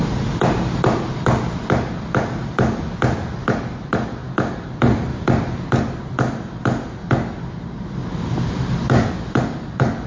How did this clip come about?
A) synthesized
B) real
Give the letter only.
B